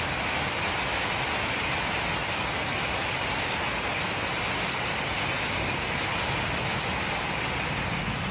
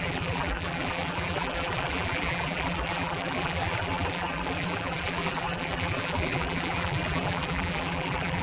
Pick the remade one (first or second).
second